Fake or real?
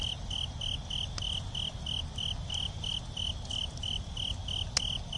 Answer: real